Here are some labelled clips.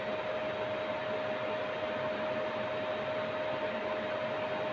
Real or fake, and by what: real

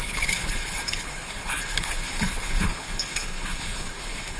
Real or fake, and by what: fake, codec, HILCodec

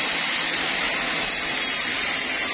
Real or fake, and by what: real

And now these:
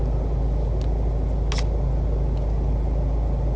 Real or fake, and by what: real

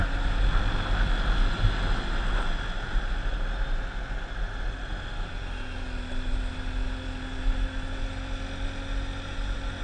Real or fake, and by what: real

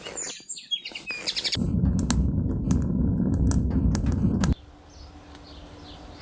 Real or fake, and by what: real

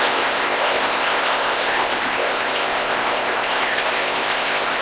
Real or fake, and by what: fake, codec, ZipCodec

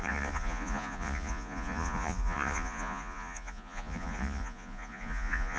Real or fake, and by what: fake, vocoder, Vocos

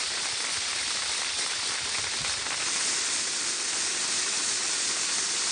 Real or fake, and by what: real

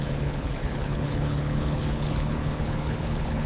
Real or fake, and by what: fake, codec, HILCodec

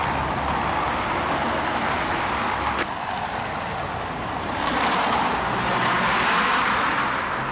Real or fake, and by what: real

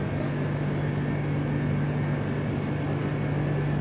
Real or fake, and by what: real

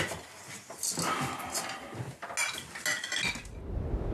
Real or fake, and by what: real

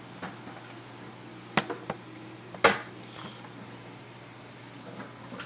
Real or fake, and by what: real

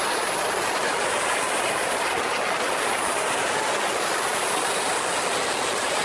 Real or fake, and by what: real